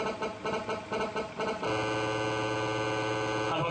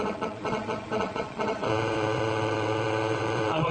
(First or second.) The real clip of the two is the first